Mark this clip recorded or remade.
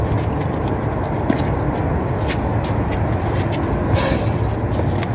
recorded